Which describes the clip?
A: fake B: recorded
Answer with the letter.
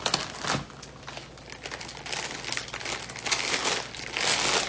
B